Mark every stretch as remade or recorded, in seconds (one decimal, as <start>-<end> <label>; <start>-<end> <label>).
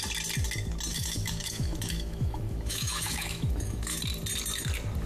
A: 0.0-0.9 recorded; 0.9-4.0 remade; 4.0-5.1 recorded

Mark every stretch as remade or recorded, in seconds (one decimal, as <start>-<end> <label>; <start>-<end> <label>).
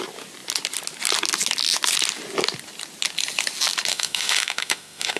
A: 0.0-3.9 recorded; 3.9-5.2 remade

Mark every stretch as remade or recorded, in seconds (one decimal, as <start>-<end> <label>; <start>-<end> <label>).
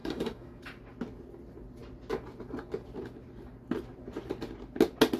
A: 0.0-0.6 remade; 0.6-5.2 recorded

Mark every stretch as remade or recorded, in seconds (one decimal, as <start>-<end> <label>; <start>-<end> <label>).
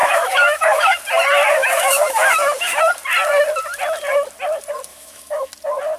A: 0.0-1.0 remade; 1.0-1.6 recorded; 1.6-2.9 remade; 2.9-4.9 recorded; 4.9-5.5 remade; 5.5-6.0 recorded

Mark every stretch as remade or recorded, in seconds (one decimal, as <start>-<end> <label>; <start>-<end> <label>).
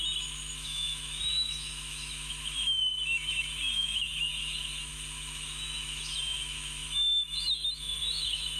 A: 0.0-8.6 remade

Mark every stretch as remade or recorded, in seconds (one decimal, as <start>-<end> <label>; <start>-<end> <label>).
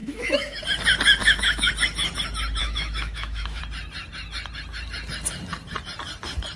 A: 0.0-0.6 remade; 0.6-1.2 recorded; 1.2-1.7 remade; 1.7-2.6 recorded; 2.6-3.6 remade; 3.6-6.6 recorded